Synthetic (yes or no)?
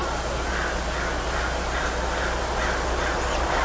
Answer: no